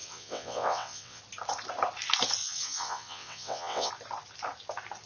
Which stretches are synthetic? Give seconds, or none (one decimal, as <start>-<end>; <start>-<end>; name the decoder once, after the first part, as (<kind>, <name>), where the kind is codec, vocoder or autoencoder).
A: 0.0-1.2 (vocoder, WaveNeXt); 2.4-3.9

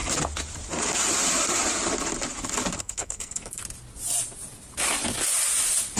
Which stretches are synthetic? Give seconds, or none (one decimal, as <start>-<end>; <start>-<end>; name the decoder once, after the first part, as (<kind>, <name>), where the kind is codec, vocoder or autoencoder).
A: 2.8-3.6 (codec, SNAC)

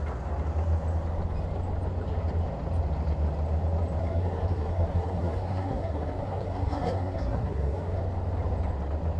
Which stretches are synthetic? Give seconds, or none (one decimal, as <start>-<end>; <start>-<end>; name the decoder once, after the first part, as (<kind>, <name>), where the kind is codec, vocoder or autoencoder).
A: 4.0-8.0 (codec, SNAC)

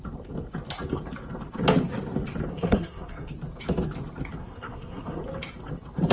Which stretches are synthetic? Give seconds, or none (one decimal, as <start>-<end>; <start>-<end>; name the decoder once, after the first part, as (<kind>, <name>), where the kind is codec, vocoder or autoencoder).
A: 2.5-3.3 (codec, SNAC); 4.4-5.2